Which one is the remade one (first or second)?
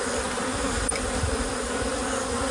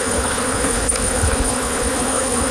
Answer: second